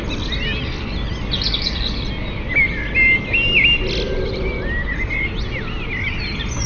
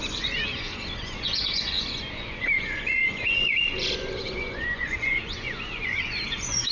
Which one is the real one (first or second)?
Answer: first